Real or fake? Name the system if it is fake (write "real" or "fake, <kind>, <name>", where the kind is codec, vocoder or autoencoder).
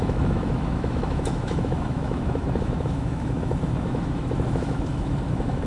fake, autoencoder, DAC-VAE